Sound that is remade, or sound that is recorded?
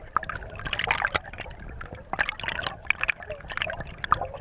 recorded